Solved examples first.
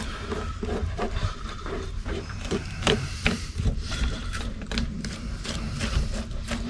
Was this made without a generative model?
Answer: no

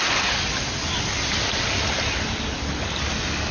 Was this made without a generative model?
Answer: yes